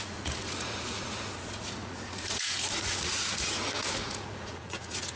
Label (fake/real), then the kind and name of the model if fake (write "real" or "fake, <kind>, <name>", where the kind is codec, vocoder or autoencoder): fake, vocoder, Vocos